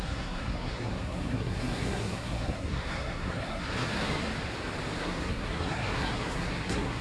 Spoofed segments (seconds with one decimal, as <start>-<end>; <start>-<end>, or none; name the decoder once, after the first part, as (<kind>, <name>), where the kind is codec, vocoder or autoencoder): 0.0-4.3 (codec, SNAC); 5.0-7.0